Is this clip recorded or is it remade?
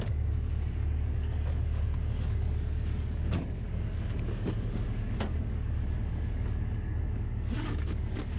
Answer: remade